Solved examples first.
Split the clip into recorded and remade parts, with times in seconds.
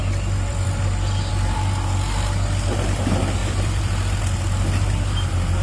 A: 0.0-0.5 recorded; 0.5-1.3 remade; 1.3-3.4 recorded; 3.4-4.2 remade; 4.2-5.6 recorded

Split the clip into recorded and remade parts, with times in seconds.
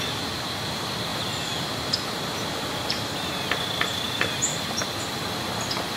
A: 0.0-1.1 recorded; 1.1-3.3 remade; 3.3-6.0 recorded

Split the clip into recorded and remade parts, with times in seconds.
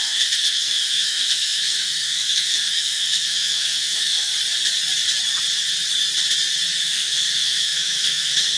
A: 0.0-4.3 remade; 4.3-6.8 recorded; 6.8-8.6 remade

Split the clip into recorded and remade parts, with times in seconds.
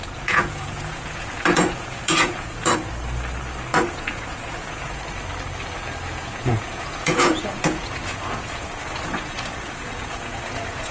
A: 0.0-2.7 remade; 2.7-3.7 recorded; 3.7-5.0 remade; 5.0-6.2 recorded; 6.2-10.9 remade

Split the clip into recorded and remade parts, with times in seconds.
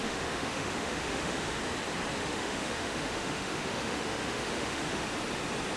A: 0.0-1.6 remade; 1.6-2.2 recorded; 2.2-5.0 remade; 5.0-5.8 recorded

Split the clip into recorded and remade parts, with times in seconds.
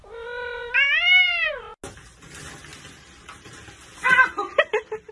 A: 0.0-2.7 recorded; 2.7-4.6 remade; 4.6-5.1 recorded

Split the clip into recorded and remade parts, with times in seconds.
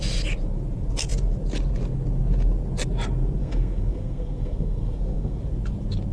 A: 0.0-3.4 recorded; 3.4-5.4 remade; 5.4-6.1 recorded